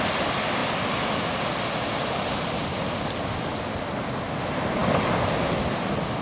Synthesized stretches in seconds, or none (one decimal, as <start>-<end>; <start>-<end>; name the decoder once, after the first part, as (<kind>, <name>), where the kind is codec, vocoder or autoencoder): none